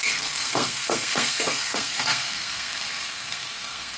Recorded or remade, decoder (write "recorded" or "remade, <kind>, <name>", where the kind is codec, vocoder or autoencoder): remade, codec, SNAC